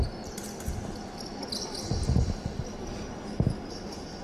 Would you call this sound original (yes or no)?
yes